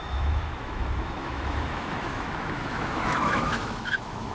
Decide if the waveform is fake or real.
fake